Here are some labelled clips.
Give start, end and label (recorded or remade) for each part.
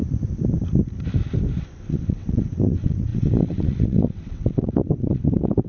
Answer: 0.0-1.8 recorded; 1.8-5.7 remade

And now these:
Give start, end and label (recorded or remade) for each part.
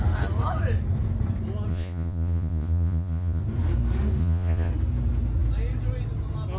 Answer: 0.0-1.7 recorded; 1.7-3.4 remade; 3.4-4.2 recorded; 4.2-4.7 remade; 4.7-6.6 recorded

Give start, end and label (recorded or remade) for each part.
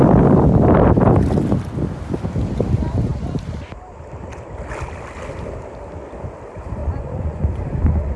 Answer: 0.0-6.8 recorded; 6.8-8.2 remade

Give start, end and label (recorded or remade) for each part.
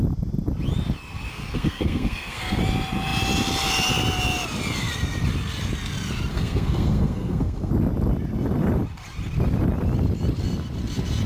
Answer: 0.0-1.3 recorded; 1.3-2.6 remade; 2.6-6.3 recorded; 6.3-7.7 remade; 7.7-11.3 recorded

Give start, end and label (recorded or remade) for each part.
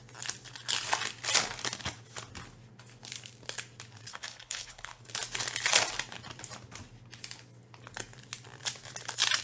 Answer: 0.0-4.1 recorded; 4.1-5.0 remade; 5.0-9.4 recorded